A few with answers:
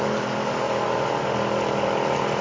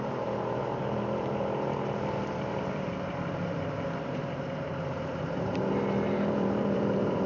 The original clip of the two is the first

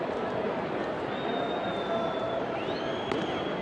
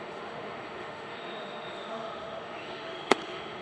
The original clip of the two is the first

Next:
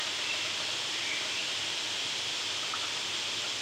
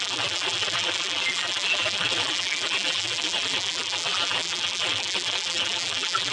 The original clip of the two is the first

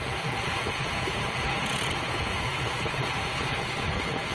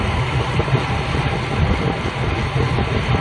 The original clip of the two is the second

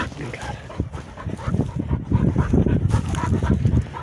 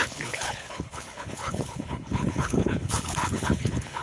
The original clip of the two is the first